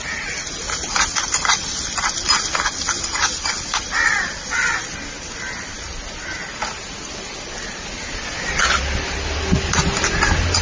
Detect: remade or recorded recorded